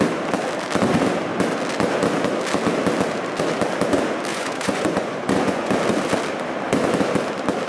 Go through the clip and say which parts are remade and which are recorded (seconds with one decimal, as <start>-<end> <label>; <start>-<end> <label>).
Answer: 0.0-4.3 recorded; 4.3-5.7 remade; 5.7-7.7 recorded